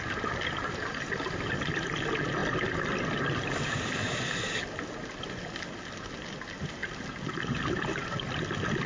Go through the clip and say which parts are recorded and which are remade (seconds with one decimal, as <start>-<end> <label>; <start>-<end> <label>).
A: 0.0-8.9 recorded

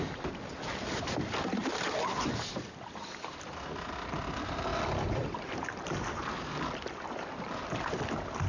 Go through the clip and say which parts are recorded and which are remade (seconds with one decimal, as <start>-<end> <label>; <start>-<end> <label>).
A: 0.0-8.5 remade